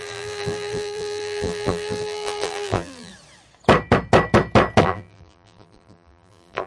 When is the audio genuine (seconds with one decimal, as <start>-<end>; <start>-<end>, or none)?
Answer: 3.1-4.8